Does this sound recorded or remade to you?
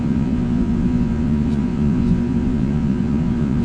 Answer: remade